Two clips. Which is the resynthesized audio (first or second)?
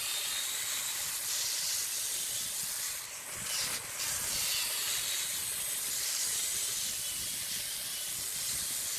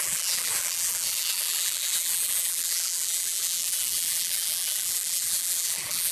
second